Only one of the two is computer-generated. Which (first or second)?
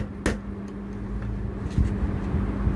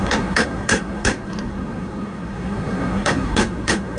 second